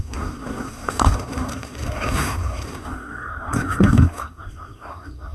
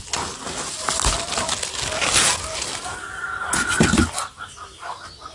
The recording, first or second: second